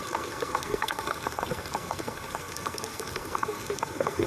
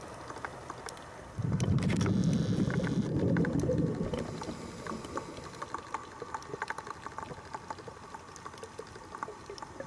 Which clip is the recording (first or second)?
second